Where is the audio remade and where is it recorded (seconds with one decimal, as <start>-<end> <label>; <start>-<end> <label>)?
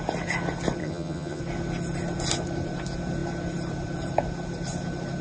0.0-0.8 recorded; 0.8-1.4 remade; 1.4-5.2 recorded